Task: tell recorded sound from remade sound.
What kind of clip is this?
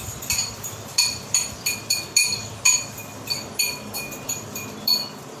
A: remade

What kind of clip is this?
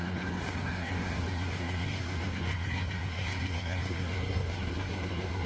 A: remade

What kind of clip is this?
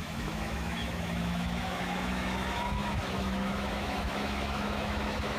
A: remade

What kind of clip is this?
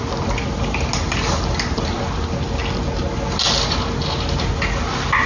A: recorded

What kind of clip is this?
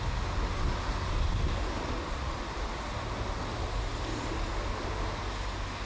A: recorded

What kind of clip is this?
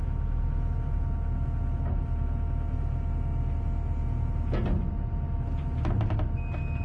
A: recorded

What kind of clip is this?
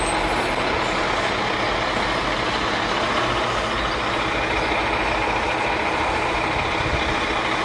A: recorded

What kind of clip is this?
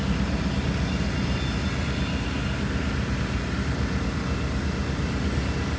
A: recorded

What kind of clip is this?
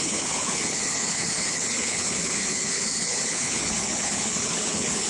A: remade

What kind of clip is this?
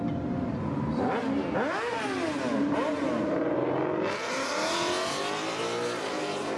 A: recorded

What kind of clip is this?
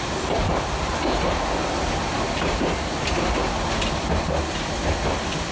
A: recorded